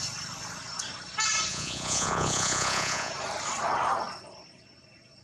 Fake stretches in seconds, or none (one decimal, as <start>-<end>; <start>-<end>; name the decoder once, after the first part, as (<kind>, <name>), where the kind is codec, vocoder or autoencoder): 1.5-3.1 (vocoder, Vocos)